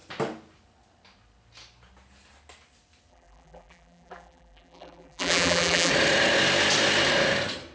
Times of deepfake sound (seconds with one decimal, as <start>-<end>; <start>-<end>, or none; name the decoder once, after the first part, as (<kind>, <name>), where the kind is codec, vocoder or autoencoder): 3.1-5.9 (vocoder, BigVGAN v2)